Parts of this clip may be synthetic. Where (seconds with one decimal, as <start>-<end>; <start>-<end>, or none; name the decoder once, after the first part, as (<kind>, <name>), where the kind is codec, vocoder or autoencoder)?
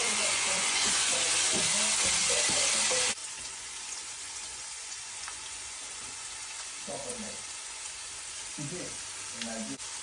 0.0-1.2 (vocoder, Vocos); 3.2-8.4